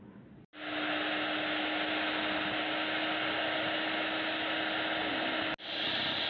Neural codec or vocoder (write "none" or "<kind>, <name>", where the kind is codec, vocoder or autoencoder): none